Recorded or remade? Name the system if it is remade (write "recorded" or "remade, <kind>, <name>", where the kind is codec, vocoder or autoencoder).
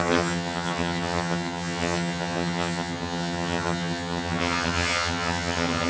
remade, vocoder, HiFi-GAN